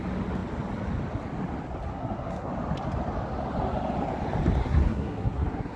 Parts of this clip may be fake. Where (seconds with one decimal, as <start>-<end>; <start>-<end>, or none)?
1.9-2.5; 4.6-5.8